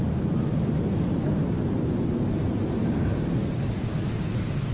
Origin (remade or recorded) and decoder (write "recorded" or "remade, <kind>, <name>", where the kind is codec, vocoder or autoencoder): recorded